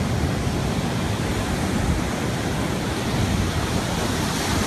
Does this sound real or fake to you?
real